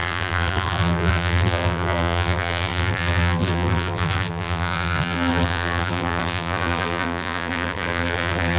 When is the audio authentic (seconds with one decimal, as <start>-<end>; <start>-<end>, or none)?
none